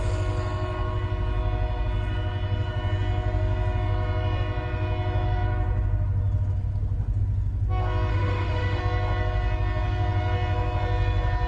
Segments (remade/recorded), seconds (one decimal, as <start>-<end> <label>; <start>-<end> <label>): 0.0-8.1 recorded; 8.1-8.8 remade; 8.8-11.5 recorded

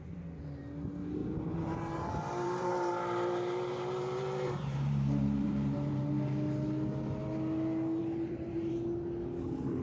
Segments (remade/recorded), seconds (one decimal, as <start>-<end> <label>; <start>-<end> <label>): 0.0-1.2 recorded; 1.2-6.1 remade; 6.1-8.0 recorded; 8.0-8.7 remade; 8.7-9.8 recorded

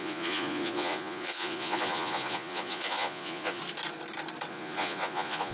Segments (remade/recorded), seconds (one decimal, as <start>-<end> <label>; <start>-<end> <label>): 0.0-3.6 remade; 3.6-4.5 recorded; 4.5-5.5 remade

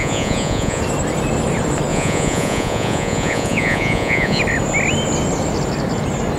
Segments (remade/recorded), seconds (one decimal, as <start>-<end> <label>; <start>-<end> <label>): 0.0-0.8 remade; 0.8-1.9 recorded; 1.9-4.4 remade; 4.4-6.4 recorded

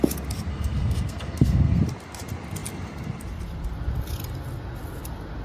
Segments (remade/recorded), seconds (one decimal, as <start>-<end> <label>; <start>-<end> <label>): 0.0-0.5 recorded; 0.5-1.8 remade; 1.8-5.4 recorded

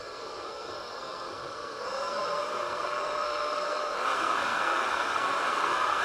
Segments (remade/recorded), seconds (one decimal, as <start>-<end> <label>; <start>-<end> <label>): 0.0-6.0 remade